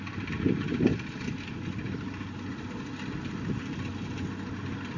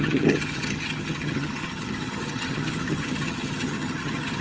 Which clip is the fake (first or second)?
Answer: second